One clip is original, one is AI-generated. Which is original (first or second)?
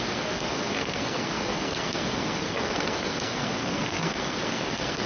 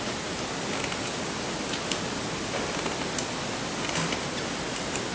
second